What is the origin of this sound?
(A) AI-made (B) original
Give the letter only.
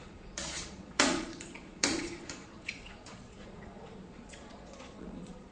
A